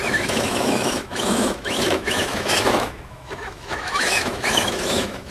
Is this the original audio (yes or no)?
no